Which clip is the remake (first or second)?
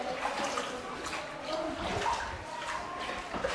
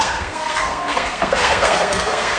second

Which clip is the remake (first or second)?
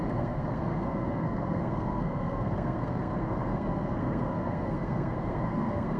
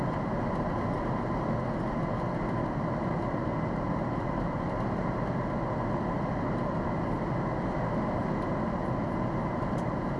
first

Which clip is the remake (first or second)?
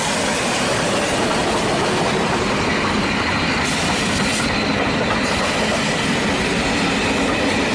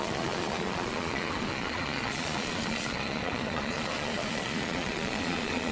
second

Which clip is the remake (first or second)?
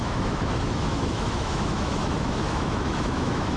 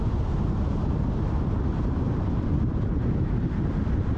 first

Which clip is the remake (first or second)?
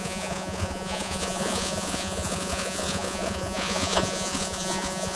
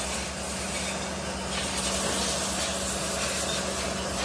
first